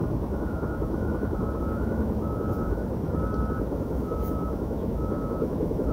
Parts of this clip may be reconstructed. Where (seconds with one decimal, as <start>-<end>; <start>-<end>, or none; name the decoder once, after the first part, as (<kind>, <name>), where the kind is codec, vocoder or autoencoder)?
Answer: 0.0-2.8 (autoencoder, DAC-VAE); 3.5-5.9